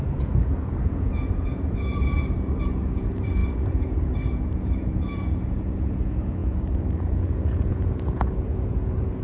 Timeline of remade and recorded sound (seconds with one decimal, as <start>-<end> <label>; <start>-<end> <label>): 0.0-9.2 remade